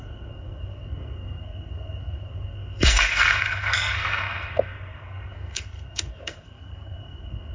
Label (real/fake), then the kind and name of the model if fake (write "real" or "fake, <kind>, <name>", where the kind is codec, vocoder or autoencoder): fake, codec, SNAC